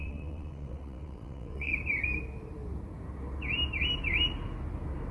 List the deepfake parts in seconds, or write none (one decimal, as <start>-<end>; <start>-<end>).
0.0-1.7